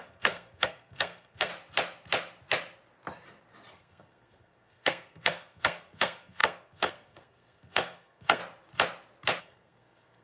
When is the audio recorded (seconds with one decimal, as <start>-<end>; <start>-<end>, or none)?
1.5-3.7; 8.4-9.4